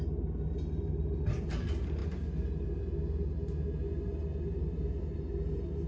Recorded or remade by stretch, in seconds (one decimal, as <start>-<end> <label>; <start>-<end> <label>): 0.0-5.9 recorded